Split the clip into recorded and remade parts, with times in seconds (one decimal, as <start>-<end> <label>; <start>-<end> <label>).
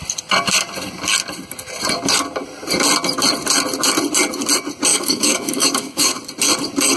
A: 0.0-4.9 recorded; 4.9-6.2 remade; 6.2-7.0 recorded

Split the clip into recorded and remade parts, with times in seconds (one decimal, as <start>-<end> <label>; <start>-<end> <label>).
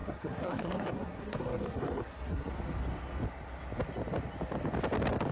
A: 0.0-2.5 remade; 2.5-5.3 recorded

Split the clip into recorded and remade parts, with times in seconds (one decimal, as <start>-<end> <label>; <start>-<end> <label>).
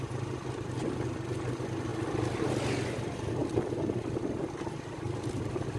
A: 0.0-5.8 recorded